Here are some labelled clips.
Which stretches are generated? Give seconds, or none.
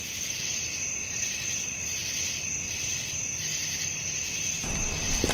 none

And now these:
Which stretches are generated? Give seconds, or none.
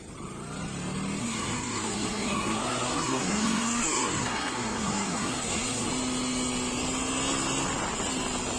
1.2-5.9 (codec, SNAC)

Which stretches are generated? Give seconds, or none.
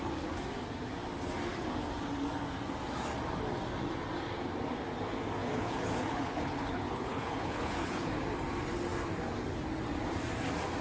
5.4-8.1 (codec, HILCodec)